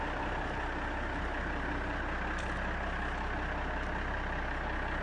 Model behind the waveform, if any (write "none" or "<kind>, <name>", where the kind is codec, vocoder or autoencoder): none